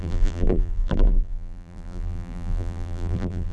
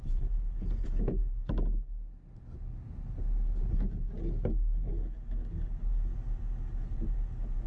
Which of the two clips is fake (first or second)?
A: first